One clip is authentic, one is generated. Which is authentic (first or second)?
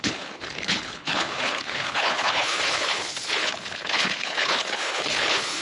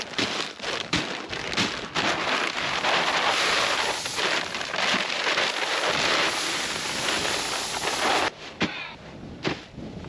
second